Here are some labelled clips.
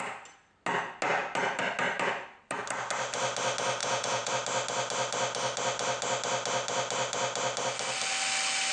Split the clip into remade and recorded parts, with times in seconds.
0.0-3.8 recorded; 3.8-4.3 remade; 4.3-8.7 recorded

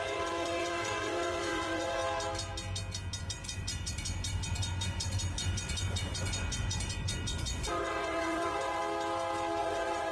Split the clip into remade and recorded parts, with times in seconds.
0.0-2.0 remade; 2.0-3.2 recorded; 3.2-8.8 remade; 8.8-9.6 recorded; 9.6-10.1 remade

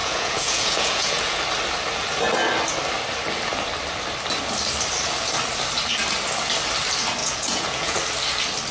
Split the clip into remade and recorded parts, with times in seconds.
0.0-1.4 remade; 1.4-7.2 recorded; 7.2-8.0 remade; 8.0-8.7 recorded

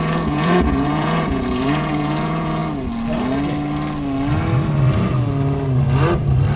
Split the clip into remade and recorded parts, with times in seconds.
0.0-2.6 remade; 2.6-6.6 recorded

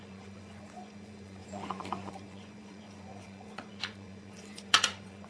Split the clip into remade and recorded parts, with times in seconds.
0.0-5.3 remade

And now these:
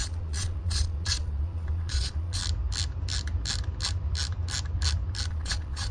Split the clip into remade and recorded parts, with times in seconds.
0.0-2.4 remade; 2.4-5.3 recorded; 5.3-5.9 remade

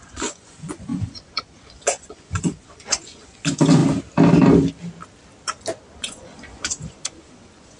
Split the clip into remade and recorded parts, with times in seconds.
0.0-3.8 remade; 3.8-6.0 recorded; 6.0-7.8 remade